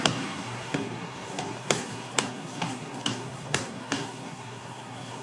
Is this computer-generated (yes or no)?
yes